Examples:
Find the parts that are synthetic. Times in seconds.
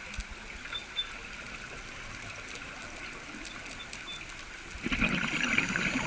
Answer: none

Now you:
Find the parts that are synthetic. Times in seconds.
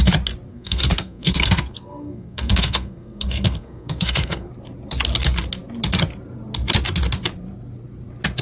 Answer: 0.5-4.5 (codec, SNAC)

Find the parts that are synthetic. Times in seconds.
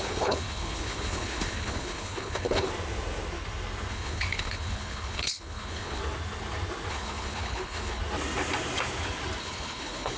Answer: 0.0-2.7 (codec, HILCodec); 3.9-6.0; 6.9-8.0; 9.4-10.2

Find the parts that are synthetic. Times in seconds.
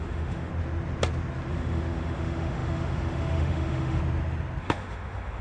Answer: 0.0-0.5 (autoencoder, DAC-VAE); 1.5-4.0; 4.6-5.4